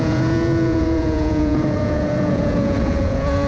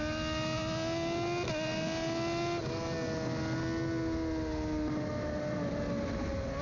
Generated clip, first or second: first